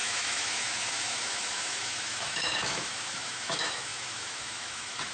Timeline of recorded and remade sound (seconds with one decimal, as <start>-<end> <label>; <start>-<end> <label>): 0.0-5.1 remade